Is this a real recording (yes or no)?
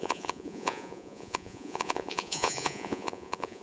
no